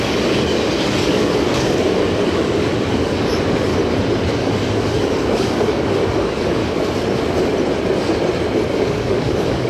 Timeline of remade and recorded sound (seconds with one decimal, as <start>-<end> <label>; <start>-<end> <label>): 0.0-3.7 remade; 3.7-4.4 recorded; 4.4-6.6 remade; 6.6-8.7 recorded; 8.7-9.7 remade